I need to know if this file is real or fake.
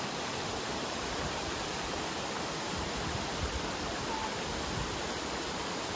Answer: real